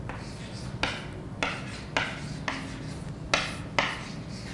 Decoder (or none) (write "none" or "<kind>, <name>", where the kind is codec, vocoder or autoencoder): none